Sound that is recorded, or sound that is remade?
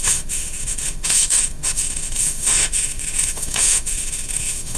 remade